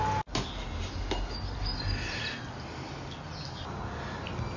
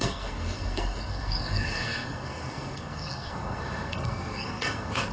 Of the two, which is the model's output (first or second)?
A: second